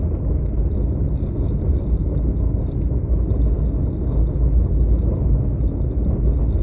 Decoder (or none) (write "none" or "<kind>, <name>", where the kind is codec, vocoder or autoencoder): none